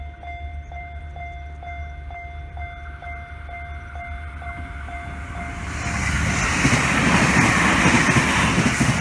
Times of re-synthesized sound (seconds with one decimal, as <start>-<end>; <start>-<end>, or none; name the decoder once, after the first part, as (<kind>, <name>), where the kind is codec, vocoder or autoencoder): 0.5-1.0 (vocoder, BigVGAN v2)